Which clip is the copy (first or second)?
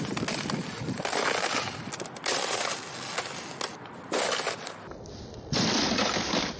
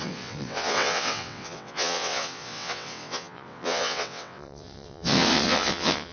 second